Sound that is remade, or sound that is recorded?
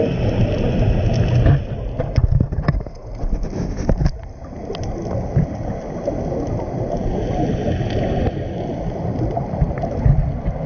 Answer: recorded